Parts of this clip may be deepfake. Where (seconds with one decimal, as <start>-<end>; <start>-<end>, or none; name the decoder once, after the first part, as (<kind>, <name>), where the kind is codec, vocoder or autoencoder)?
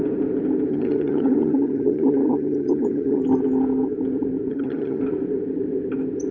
0.7-3.2 (vocoder, HiFi-GAN); 4.5-5.0